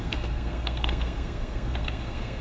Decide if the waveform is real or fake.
fake